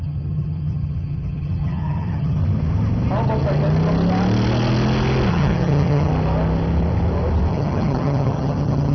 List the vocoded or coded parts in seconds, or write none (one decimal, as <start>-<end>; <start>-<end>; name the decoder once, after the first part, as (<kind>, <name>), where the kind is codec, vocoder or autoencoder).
0.0-2.4 (vocoder, HiFi-GAN); 5.3-6.1; 7.5-8.9